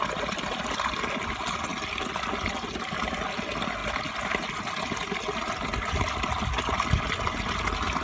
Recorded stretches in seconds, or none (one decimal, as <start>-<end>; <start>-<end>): 0.0-8.0